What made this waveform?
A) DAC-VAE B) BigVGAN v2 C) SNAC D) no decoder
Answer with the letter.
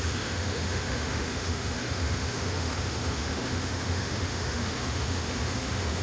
A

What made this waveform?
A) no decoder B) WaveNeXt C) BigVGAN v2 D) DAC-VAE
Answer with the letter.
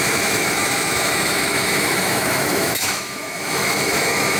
D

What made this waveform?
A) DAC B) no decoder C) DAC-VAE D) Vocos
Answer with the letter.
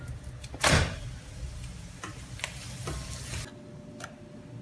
B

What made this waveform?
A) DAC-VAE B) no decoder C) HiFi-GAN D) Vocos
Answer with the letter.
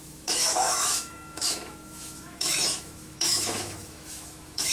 A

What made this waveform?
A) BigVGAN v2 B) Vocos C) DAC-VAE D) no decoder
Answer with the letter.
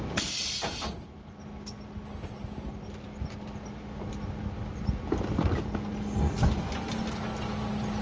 D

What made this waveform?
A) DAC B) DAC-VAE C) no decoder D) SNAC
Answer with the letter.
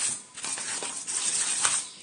C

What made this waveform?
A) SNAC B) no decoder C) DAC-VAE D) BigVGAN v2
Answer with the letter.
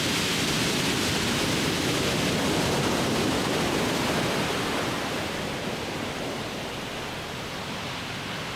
B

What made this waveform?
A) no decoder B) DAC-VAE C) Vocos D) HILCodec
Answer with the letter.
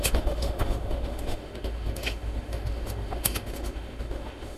B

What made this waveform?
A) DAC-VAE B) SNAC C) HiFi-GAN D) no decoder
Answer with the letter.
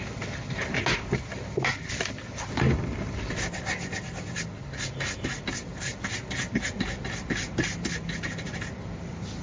D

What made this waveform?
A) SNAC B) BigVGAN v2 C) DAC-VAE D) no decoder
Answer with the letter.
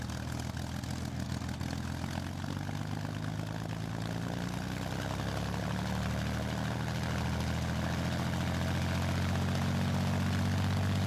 D